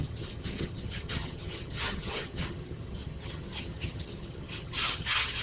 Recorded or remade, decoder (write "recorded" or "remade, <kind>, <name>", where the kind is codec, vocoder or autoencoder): remade, vocoder, HiFi-GAN